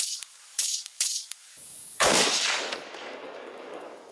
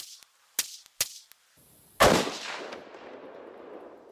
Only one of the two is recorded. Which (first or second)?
second